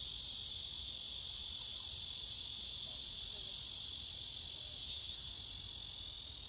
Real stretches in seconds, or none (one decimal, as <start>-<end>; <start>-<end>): 0.0-4.8; 5.3-6.5